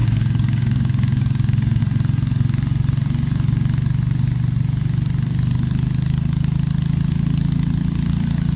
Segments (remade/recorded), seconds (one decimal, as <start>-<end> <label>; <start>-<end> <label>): 0.0-1.8 remade; 1.8-8.6 recorded